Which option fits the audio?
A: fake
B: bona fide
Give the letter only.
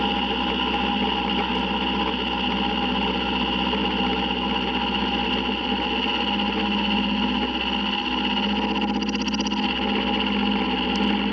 B